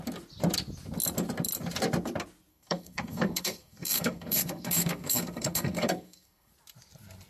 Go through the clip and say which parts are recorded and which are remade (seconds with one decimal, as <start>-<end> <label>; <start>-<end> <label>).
0.0-2.5 recorded; 2.5-6.5 remade; 6.5-7.3 recorded